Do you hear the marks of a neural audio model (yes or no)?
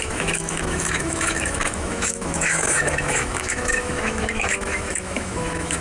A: yes